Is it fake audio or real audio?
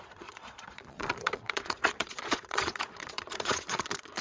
fake